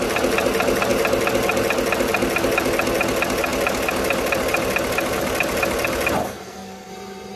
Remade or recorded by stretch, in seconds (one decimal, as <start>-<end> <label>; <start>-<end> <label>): 0.0-6.2 recorded; 6.2-6.9 remade; 6.9-7.4 recorded